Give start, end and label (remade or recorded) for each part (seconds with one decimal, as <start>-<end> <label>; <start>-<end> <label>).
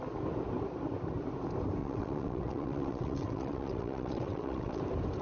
0.0-1.8 recorded; 1.8-4.8 remade; 4.8-5.2 recorded